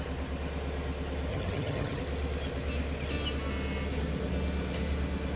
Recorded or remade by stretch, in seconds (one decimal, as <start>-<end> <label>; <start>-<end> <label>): 0.0-1.3 recorded; 1.3-2.0 remade; 2.0-5.4 recorded

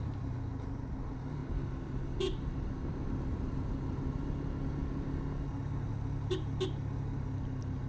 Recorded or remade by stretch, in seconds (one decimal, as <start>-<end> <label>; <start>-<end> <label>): 0.0-7.9 recorded

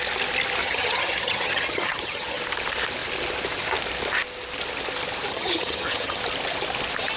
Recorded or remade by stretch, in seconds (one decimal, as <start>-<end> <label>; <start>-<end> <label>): 0.0-0.6 recorded; 0.6-2.4 remade; 2.4-5.3 recorded; 5.3-6.2 remade; 6.2-7.2 recorded

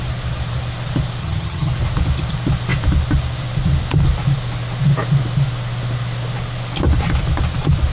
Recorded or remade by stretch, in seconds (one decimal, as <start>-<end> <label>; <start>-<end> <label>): 0.0-1.2 recorded; 1.2-1.7 remade; 1.7-7.9 recorded

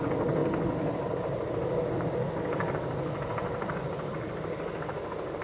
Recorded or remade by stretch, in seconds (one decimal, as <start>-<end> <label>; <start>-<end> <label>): 0.0-5.4 recorded

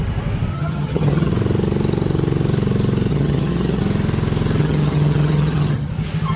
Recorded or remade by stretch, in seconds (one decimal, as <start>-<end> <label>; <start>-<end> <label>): 0.0-0.5 recorded; 0.5-1.3 remade; 1.3-3.1 recorded; 3.1-3.8 remade; 3.8-4.6 recorded; 4.6-5.9 remade; 5.9-6.4 recorded

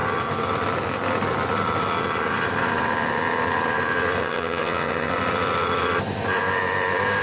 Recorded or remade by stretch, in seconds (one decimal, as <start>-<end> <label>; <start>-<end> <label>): 0.0-4.2 recorded; 4.2-5.1 remade; 5.1-7.2 recorded